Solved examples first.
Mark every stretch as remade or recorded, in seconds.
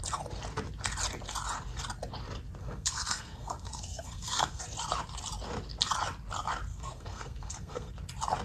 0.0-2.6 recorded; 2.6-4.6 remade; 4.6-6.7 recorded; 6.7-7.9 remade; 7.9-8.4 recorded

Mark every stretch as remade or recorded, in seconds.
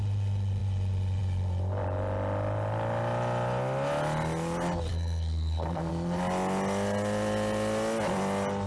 0.0-4.9 recorded; 4.9-5.9 remade; 5.9-8.7 recorded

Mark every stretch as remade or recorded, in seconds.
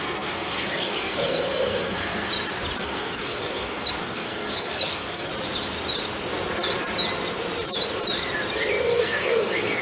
0.0-2.3 remade; 2.3-2.8 recorded; 2.8-5.3 remade; 5.3-8.8 recorded; 8.8-9.8 remade